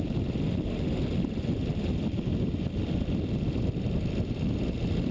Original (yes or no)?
yes